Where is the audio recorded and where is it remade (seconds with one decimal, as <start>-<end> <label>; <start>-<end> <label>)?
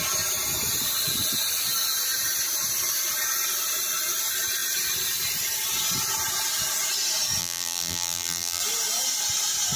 0.0-7.4 recorded; 7.4-8.6 remade; 8.6-9.8 recorded